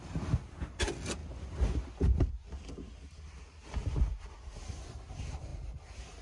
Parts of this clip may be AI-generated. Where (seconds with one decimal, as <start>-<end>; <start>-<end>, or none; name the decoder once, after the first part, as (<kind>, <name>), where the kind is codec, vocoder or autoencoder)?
none

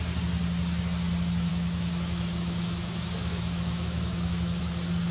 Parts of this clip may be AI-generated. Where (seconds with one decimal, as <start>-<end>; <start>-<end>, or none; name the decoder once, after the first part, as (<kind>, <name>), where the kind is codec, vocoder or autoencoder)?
1.5-4.6 (autoencoder, DAC-VAE)

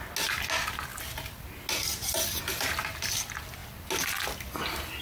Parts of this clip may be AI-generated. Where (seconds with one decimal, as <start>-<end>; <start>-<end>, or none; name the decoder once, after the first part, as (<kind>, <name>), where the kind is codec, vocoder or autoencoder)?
none

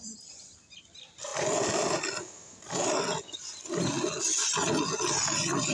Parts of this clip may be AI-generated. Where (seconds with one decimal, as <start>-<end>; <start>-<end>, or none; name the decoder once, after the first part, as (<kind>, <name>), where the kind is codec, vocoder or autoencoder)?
none

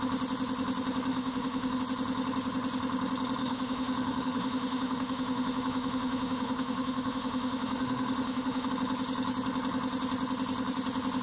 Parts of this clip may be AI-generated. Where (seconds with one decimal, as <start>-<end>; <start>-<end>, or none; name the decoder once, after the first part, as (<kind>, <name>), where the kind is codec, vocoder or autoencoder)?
1.1-1.8 (autoencoder, DAC-VAE); 3.4-8.7

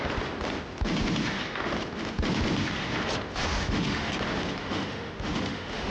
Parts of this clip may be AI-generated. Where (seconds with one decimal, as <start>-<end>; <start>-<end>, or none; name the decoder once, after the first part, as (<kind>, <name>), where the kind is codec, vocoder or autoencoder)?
3.5-4.1 (autoencoder, DAC-VAE); 4.6-5.9

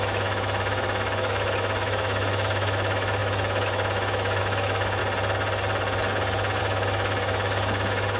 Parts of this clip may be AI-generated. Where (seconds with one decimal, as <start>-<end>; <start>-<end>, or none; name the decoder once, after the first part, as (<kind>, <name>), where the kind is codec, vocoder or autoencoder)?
0.0-5.0 (autoencoder, DAC-VAE); 6.6-8.2